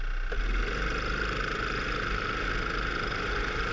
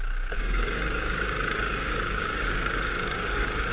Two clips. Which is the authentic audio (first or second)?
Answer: first